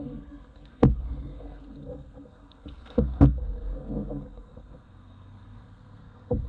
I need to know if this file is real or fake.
fake